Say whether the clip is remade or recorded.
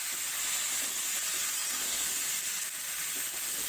recorded